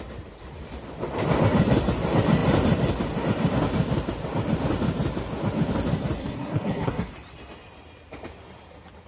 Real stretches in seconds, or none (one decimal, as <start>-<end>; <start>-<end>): 0.0-6.2; 7.1-9.1